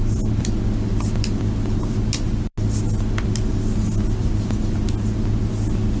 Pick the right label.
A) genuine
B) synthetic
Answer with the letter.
A